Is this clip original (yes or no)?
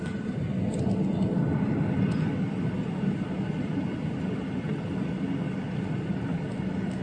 yes